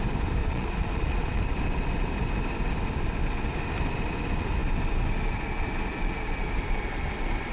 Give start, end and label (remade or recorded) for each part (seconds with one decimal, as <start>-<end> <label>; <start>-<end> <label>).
0.0-0.4 recorded; 0.4-1.4 remade; 1.4-7.5 recorded